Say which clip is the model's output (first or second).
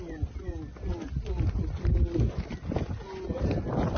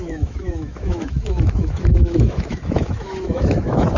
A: second